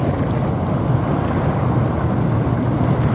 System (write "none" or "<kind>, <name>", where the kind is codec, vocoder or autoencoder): none